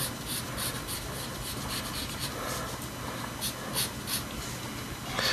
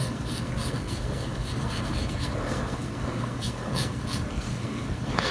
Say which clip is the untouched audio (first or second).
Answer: first